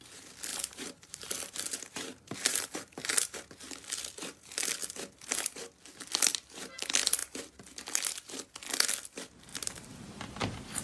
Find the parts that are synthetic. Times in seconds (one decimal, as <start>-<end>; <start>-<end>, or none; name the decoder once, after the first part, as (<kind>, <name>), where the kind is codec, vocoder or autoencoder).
0.5-3.5 (vocoder, BigVGAN v2); 9.5-10.1